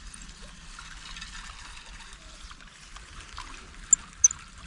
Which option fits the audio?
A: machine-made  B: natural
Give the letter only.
B